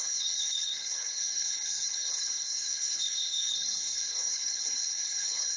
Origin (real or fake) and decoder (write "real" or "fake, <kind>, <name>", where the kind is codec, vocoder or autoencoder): fake, codec, HILCodec